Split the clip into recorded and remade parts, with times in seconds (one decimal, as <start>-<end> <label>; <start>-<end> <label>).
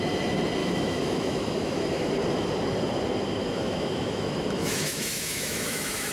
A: 0.0-0.6 recorded; 0.6-2.1 remade; 2.1-3.4 recorded; 3.4-6.1 remade